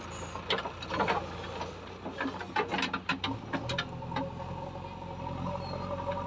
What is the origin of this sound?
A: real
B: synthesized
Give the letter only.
A